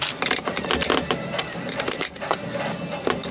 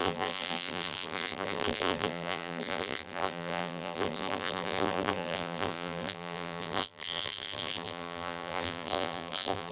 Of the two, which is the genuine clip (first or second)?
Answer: first